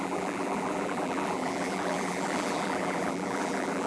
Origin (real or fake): fake